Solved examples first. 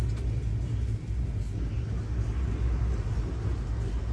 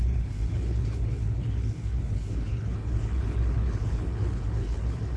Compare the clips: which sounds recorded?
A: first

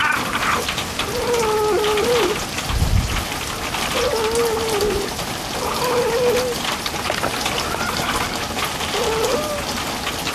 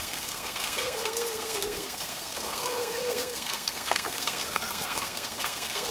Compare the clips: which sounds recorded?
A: first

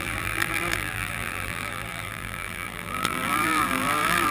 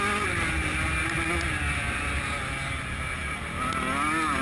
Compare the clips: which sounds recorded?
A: second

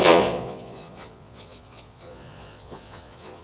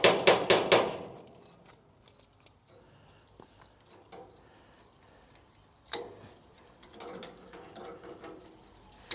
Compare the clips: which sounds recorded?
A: second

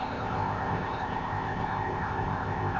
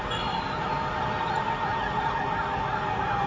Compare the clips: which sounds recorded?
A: second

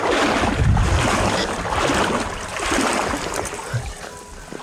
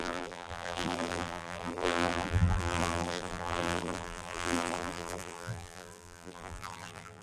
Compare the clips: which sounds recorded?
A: first